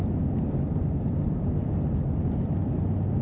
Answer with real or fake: real